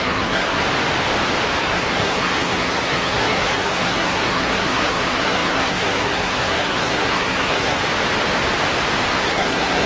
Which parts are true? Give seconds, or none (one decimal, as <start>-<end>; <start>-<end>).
0.6-1.6; 7.8-9.1